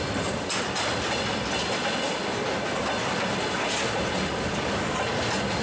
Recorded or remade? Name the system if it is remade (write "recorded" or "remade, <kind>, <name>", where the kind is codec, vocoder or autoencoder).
recorded